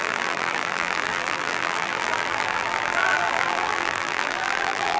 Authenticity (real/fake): fake